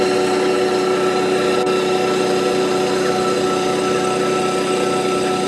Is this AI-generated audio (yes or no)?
no